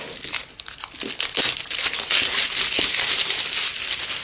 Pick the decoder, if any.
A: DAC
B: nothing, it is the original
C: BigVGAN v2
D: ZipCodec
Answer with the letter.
B